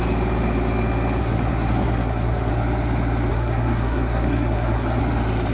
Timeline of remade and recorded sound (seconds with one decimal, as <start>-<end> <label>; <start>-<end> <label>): 0.0-1.2 recorded; 1.2-2.5 remade; 2.5-3.3 recorded; 3.3-5.0 remade; 5.0-5.5 recorded